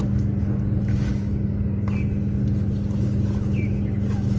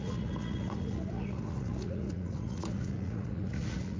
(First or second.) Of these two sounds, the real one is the first